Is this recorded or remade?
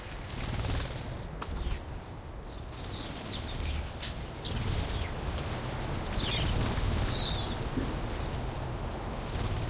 recorded